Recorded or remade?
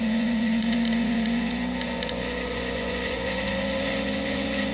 remade